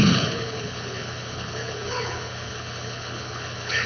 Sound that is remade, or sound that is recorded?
remade